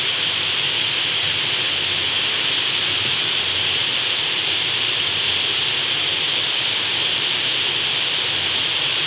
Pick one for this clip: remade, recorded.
recorded